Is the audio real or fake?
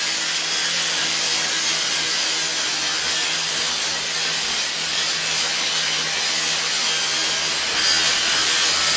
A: real